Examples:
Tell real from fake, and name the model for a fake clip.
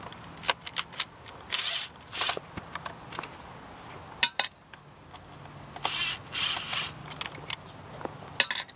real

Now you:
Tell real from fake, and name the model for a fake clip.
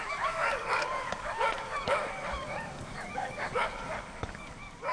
fake, codec, DAC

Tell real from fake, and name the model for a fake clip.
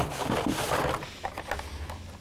real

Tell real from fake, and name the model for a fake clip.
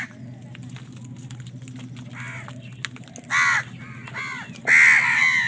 real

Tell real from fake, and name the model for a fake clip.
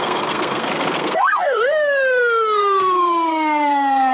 fake, codec, SNAC